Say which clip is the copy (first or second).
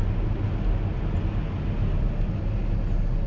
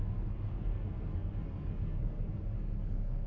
second